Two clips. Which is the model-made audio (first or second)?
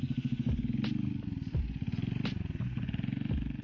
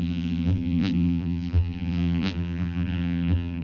second